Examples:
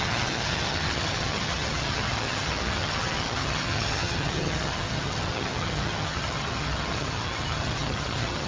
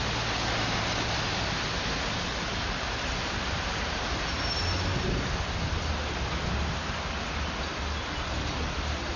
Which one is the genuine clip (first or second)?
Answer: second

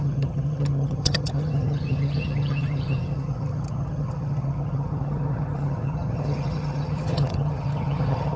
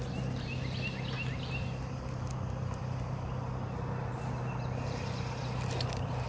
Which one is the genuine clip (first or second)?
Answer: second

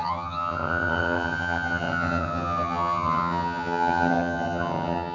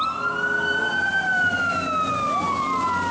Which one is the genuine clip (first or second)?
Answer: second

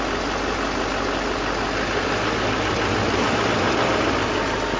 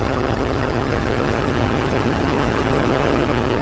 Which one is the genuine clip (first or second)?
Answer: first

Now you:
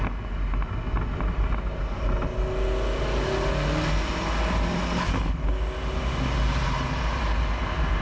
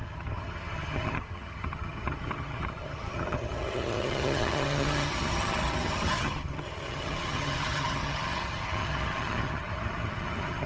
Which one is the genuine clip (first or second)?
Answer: first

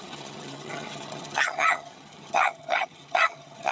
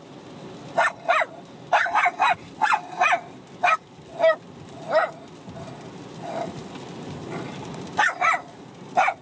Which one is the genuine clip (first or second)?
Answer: second